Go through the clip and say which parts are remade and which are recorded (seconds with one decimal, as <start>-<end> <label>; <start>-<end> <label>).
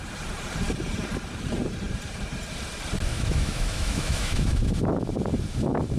0.0-3.1 recorded; 3.1-4.7 remade; 4.7-6.0 recorded